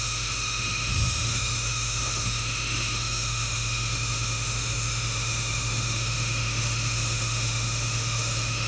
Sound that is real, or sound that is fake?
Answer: fake